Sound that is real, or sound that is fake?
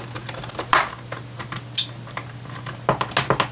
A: real